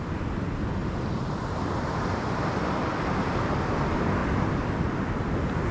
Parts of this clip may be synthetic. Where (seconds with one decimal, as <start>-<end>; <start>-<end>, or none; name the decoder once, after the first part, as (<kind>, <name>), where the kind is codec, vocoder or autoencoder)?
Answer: 0.8-3.0 (vocoder, BigVGAN v2)